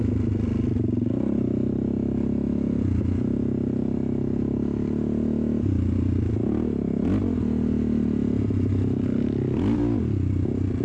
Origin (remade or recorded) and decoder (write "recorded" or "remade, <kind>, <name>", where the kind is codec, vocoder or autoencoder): recorded